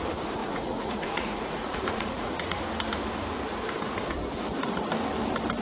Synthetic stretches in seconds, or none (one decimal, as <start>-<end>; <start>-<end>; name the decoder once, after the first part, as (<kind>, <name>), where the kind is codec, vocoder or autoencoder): 0.4-2.6 (vocoder, Vocos)